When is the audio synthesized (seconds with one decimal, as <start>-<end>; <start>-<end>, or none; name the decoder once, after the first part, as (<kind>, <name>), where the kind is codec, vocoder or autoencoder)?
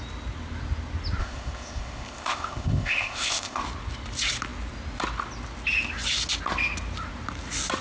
1.2-3.6 (codec, ZipCodec)